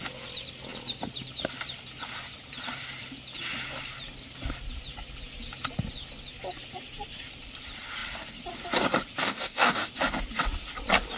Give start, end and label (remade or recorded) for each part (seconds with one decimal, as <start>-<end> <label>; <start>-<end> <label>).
0.0-9.2 recorded; 9.2-9.9 remade; 9.9-11.2 recorded